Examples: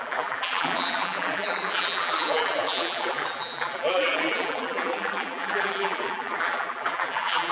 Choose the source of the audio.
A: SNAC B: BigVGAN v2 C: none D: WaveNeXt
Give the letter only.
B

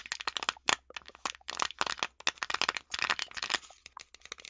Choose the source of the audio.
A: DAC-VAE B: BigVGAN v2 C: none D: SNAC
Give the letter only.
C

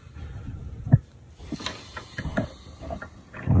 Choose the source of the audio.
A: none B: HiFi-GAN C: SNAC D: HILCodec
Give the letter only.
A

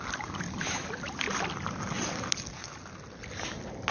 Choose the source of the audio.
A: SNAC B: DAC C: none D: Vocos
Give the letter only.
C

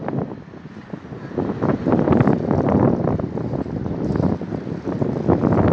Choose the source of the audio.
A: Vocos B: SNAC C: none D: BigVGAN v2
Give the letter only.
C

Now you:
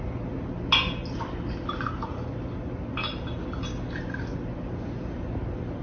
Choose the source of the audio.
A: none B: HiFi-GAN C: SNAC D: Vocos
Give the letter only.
A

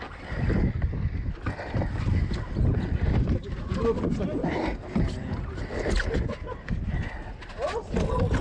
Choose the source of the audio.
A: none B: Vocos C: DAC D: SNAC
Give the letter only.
A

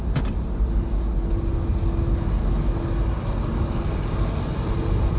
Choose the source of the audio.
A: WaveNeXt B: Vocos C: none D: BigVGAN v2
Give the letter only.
C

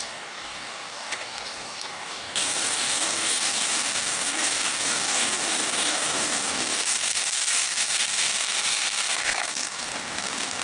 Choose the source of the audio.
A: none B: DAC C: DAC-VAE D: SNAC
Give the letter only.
B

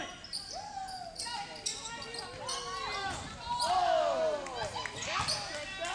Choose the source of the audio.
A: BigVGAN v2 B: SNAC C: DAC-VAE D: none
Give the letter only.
D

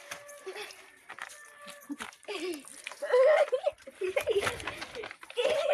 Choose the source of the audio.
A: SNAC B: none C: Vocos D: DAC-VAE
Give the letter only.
B